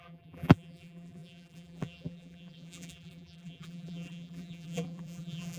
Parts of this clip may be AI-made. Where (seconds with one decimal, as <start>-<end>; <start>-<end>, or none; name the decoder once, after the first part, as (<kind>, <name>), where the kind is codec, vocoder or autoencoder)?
0.0-5.6 (vocoder, BigVGAN v2)